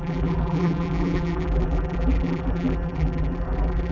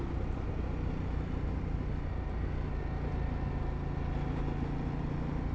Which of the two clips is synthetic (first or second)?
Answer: first